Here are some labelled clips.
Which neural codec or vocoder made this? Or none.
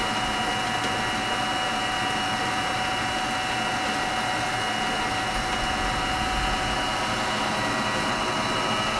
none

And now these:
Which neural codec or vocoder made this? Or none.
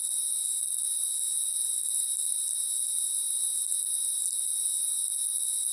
none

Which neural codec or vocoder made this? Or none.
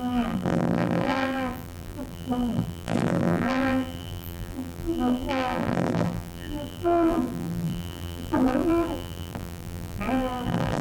vocoder, BigVGAN v2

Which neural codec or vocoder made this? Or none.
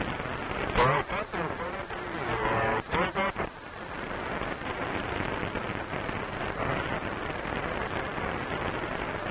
none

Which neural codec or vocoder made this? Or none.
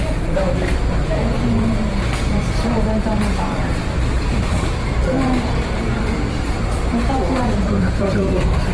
vocoder, BigVGAN v2